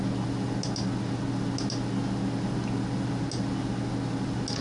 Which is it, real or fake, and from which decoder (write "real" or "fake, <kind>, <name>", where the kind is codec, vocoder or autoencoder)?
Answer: real